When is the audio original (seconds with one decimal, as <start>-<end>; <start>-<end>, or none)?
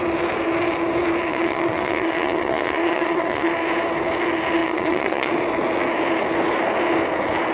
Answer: 0.0-1.3; 3.5-4.6; 5.3-7.5